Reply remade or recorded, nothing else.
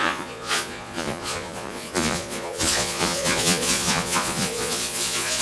remade